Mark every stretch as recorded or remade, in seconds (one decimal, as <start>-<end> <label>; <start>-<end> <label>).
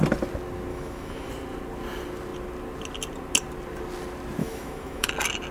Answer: 0.0-0.7 recorded; 0.7-1.3 remade; 1.3-4.4 recorded; 4.4-5.1 remade; 5.1-5.5 recorded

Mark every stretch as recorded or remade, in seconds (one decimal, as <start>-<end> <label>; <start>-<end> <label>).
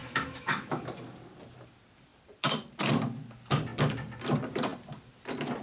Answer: 0.0-0.8 remade; 0.8-5.6 recorded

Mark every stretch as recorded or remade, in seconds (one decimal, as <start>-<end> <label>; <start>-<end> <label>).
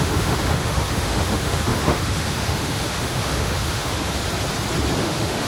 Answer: 0.0-4.2 remade; 4.2-5.0 recorded; 5.0-5.5 remade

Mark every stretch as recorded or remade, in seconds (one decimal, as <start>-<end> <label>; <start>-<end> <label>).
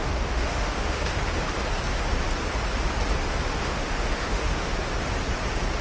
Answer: 0.0-1.2 remade; 1.2-3.5 recorded; 3.5-4.7 remade; 4.7-5.8 recorded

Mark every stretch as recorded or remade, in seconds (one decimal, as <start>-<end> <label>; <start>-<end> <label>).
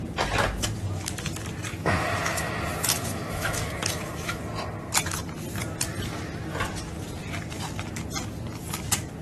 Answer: 0.0-1.7 recorded; 1.7-4.4 remade; 4.4-9.2 recorded